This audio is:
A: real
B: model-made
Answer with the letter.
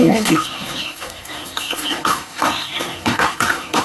B